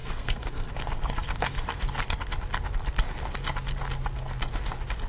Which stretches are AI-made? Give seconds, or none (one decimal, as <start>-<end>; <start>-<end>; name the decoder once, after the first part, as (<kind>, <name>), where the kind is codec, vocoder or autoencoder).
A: 0.0-0.7 (codec, SNAC)